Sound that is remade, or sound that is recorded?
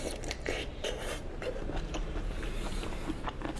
remade